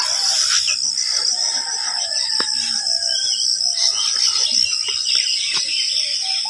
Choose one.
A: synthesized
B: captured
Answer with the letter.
B